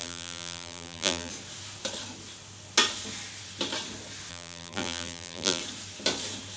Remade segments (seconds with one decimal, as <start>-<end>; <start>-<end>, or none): 0.0-1.3; 4.3-5.6